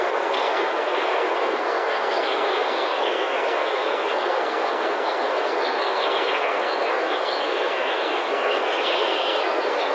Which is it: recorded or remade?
remade